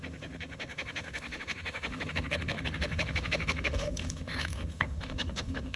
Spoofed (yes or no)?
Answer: yes